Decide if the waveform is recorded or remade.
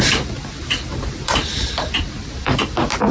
recorded